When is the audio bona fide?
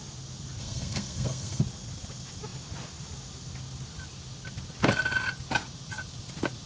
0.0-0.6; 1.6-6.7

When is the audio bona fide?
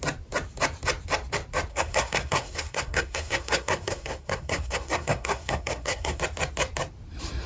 0.0-1.7; 6.2-7.5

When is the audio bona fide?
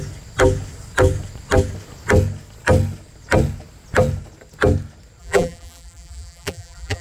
0.0-5.2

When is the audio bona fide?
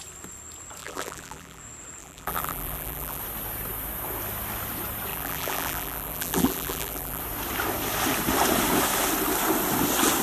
0.0-0.8; 1.6-2.0; 3.2-5.1; 7.2-10.2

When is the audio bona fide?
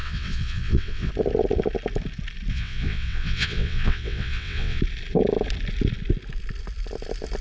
1.1-2.5; 4.8-7.4